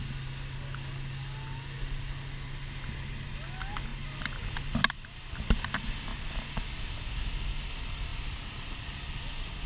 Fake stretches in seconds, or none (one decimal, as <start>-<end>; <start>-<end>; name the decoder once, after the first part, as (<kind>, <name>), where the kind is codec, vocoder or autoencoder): none